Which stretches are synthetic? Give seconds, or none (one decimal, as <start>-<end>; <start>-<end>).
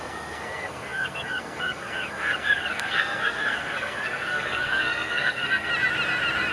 0.0-5.7